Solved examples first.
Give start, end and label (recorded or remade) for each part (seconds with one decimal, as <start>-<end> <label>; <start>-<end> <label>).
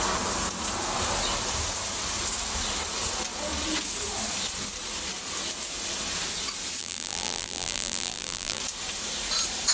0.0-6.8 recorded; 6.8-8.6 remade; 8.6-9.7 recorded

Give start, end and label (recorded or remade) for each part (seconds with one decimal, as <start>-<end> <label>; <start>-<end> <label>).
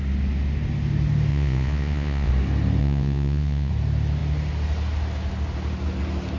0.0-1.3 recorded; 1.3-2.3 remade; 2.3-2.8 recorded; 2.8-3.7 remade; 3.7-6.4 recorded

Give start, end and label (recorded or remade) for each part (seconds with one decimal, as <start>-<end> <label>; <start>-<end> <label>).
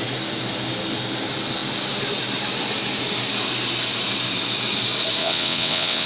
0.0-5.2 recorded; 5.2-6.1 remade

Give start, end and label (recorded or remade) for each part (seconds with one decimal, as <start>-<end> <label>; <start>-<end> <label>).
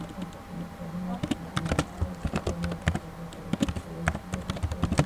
0.0-5.1 recorded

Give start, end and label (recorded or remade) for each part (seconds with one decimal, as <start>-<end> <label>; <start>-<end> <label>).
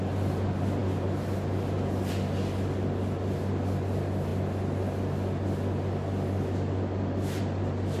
0.0-8.0 recorded